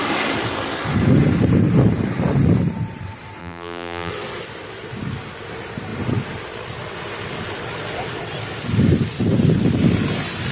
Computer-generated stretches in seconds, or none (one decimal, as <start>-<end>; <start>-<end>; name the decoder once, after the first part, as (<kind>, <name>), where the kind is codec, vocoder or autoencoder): 3.4-4.1 (vocoder, BigVGAN v2)